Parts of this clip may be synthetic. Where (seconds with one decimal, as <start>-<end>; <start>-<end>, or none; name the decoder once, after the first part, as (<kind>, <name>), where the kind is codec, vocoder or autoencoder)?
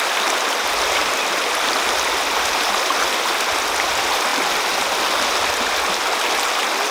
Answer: 0.0-1.0 (vocoder, BigVGAN v2); 3.9-4.3; 6.5-6.9